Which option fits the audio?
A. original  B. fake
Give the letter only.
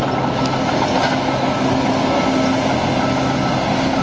A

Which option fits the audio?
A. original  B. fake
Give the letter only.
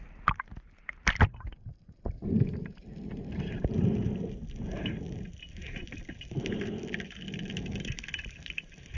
A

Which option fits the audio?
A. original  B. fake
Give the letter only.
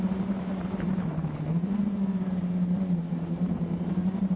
B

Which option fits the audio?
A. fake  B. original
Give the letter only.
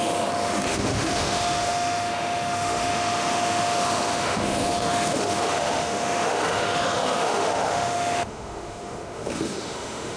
A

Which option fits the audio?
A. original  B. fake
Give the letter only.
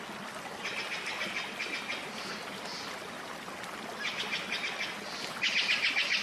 A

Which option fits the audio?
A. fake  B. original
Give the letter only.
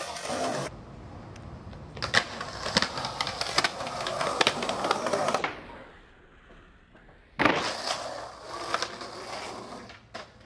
B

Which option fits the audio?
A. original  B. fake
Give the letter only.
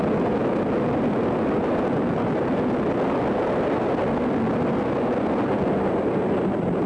A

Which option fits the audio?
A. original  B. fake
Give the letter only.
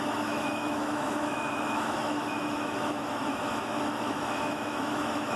B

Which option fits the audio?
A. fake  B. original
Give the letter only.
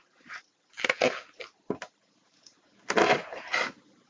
B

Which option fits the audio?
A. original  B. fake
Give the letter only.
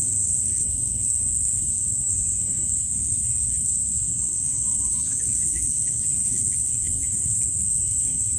B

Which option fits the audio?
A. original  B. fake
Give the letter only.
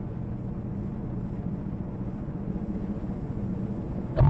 B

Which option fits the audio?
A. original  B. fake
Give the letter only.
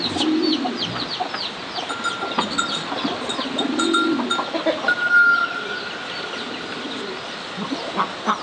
A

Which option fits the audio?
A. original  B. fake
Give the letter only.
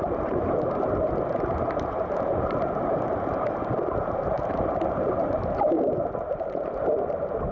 B